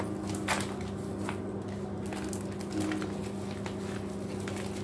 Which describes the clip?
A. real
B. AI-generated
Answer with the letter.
A